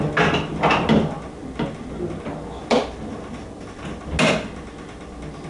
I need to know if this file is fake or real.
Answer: real